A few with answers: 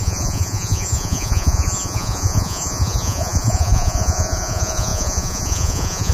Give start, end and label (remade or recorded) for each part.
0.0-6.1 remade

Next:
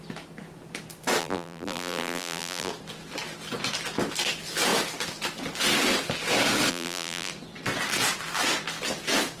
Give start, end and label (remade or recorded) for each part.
0.0-1.2 recorded; 1.2-2.7 remade; 2.7-6.7 recorded; 6.7-7.3 remade; 7.3-9.4 recorded

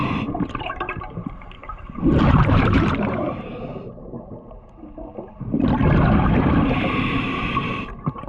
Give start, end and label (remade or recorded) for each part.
0.0-3.5 remade; 3.5-7.2 recorded; 7.2-8.3 remade

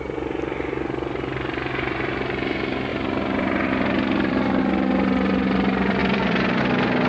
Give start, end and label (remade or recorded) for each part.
0.0-2.9 recorded; 2.9-4.6 remade; 4.6-6.0 recorded; 6.0-6.6 remade; 6.6-7.1 recorded

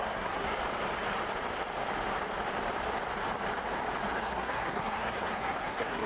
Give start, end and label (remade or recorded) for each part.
0.0-0.5 remade; 0.5-4.2 recorded; 4.2-6.1 remade